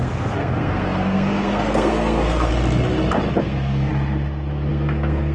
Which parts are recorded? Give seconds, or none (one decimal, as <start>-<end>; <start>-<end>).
2.5-3.4; 3.9-4.7